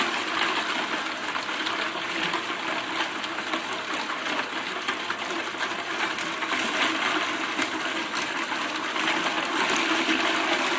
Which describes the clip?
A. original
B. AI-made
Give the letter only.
A